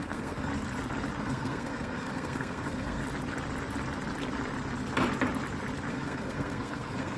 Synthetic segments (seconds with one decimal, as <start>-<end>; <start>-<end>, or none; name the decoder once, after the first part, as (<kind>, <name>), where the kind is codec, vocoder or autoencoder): 0.0-0.5 (codec, SNAC); 1.2-3.0; 5.9-7.2